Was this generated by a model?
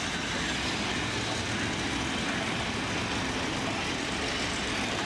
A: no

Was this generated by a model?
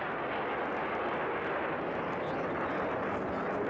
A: no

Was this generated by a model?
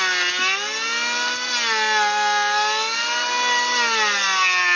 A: no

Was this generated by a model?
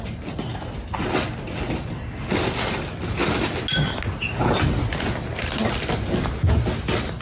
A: no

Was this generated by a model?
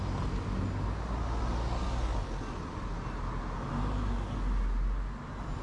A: no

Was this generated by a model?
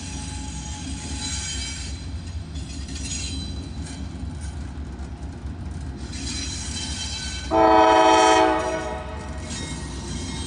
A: no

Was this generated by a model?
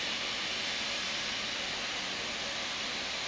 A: no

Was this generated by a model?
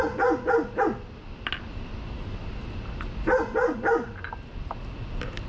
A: no